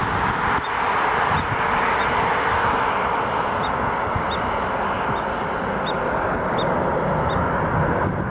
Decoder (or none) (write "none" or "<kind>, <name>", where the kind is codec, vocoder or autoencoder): none